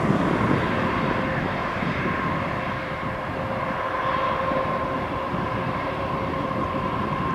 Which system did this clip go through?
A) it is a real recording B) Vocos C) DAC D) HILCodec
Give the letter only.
A